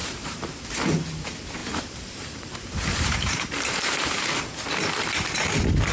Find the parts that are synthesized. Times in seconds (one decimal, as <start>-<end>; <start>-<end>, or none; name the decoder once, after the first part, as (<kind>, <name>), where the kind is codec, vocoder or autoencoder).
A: 0.0-0.5 (vocoder, BigVGAN v2); 1.6-4.4